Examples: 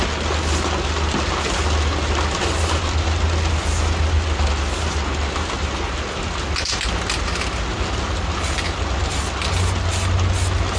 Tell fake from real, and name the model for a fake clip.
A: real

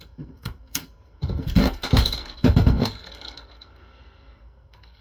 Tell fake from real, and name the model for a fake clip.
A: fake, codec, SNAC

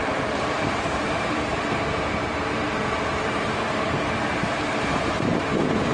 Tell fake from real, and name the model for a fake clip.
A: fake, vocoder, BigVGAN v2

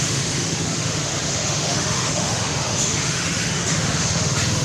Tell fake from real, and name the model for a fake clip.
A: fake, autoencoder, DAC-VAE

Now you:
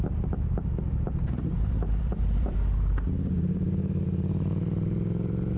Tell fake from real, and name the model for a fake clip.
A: fake, vocoder, BigVGAN v2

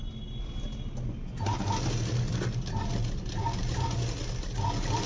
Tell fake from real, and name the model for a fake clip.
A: real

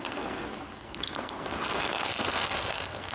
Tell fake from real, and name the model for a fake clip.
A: fake, codec, SNAC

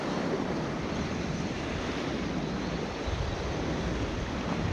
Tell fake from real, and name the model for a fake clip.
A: fake, vocoder, BigVGAN v2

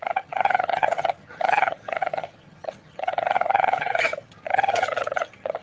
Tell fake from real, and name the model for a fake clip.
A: fake, vocoder, HiFi-GAN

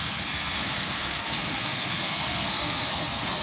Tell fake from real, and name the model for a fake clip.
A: fake, codec, SNAC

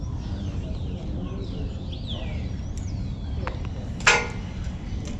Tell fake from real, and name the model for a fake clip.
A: real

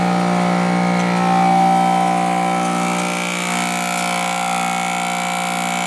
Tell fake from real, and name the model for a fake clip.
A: real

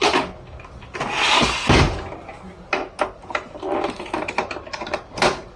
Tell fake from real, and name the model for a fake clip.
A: real